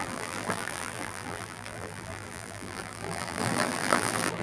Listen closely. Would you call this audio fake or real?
fake